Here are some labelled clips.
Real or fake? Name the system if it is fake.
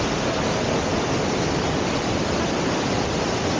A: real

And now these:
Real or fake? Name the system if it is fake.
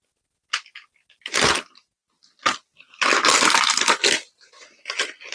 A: real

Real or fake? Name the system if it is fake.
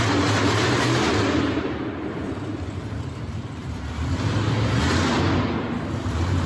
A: fake, vocoder, BigVGAN v2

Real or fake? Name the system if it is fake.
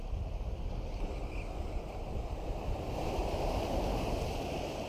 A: real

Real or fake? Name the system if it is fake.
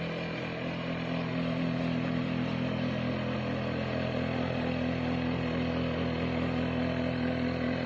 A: real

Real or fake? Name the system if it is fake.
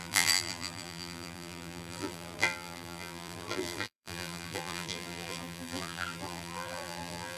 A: fake, vocoder, BigVGAN v2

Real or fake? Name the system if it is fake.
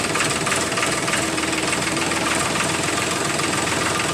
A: fake, vocoder, BigVGAN v2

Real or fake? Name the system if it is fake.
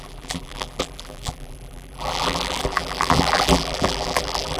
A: fake, vocoder, BigVGAN v2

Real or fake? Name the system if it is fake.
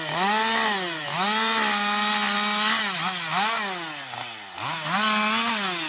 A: real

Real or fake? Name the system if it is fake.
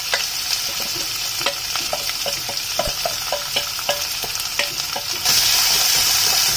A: real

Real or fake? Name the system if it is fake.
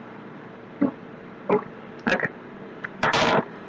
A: fake, vocoder, BigVGAN v2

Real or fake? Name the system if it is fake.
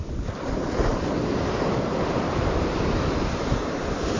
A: real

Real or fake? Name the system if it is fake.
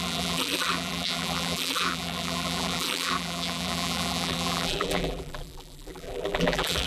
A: fake, vocoder, BigVGAN v2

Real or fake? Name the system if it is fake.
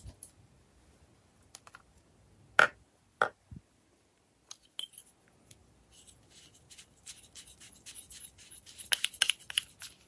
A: real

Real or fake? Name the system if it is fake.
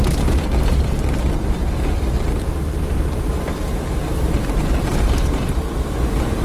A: fake, vocoder, BigVGAN v2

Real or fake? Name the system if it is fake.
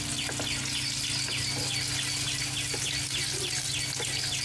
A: real